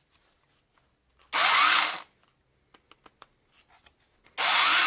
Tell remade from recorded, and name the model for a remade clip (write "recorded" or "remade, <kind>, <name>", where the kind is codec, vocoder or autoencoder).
recorded